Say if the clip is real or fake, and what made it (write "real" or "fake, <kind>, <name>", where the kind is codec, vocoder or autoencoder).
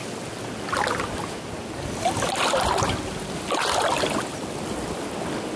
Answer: real